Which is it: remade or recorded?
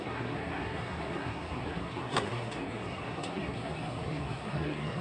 remade